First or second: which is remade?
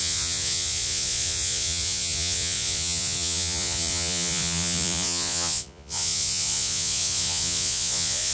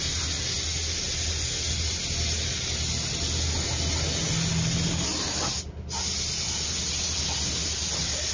first